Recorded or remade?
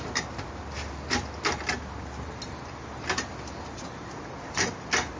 recorded